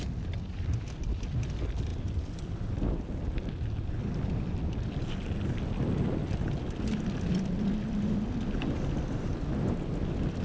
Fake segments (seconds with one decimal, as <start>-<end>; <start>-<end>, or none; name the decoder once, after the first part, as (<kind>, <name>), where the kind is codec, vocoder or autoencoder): none